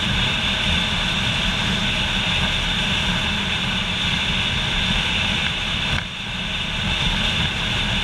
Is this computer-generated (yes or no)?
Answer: no